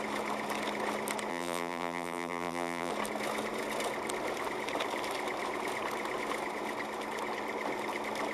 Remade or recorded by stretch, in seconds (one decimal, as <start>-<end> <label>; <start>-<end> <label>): 0.0-1.3 recorded; 1.3-2.9 remade; 2.9-8.3 recorded